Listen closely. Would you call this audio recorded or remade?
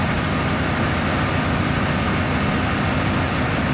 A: recorded